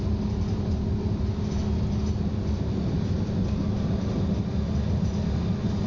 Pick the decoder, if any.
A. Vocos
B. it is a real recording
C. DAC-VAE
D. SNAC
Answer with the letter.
B